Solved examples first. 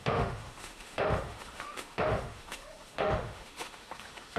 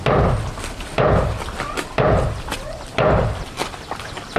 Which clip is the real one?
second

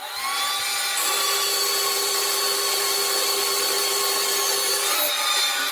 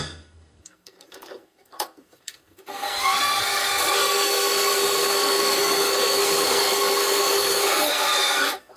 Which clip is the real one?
first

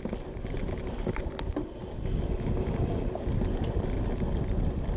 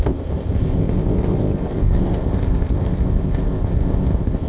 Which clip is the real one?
first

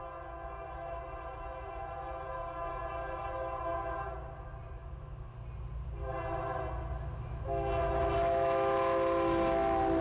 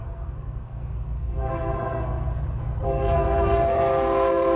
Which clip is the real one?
first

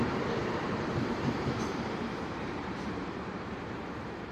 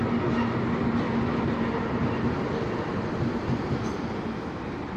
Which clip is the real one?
second